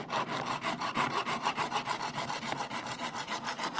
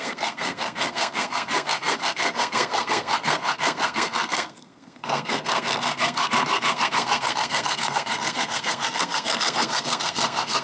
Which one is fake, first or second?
second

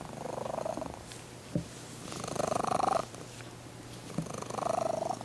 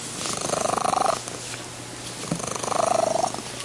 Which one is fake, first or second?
first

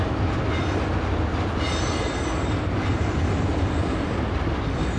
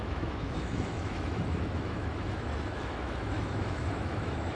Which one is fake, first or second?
second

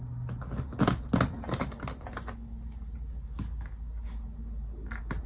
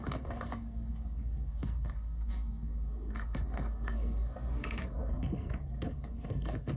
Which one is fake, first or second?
second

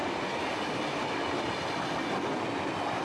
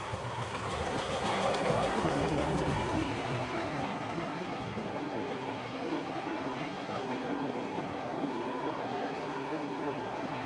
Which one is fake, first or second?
second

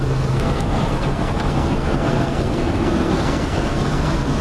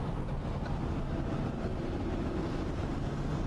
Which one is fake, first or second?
first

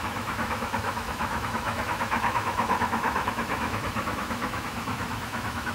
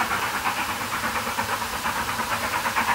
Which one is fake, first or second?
first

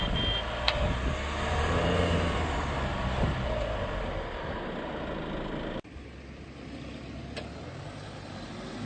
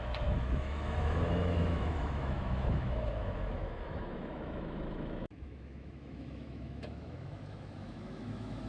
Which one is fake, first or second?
second